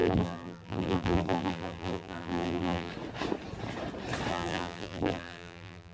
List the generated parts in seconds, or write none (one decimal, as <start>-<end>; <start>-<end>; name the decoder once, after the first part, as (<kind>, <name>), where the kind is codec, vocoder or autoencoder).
0.0-2.9 (vocoder, BigVGAN v2); 4.3-5.9